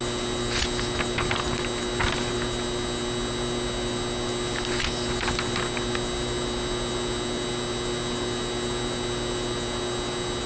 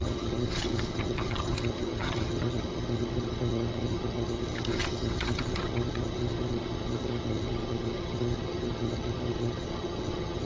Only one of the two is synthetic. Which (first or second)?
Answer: second